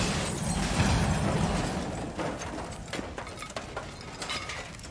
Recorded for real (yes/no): yes